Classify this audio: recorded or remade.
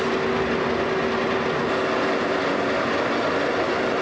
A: recorded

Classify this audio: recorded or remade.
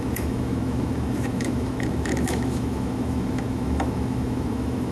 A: remade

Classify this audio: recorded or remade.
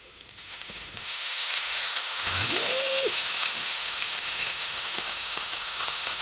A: remade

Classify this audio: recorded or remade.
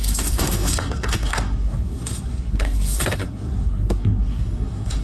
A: remade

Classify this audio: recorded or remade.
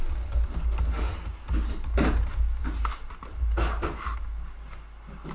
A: recorded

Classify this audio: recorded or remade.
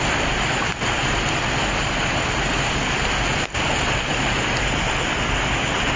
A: recorded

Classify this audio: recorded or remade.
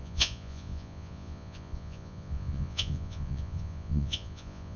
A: remade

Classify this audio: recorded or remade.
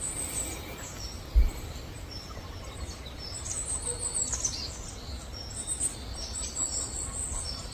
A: recorded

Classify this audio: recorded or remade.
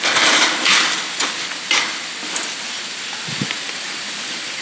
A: recorded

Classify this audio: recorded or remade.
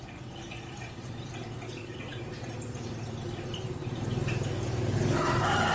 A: recorded